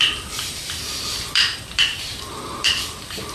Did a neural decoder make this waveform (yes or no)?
yes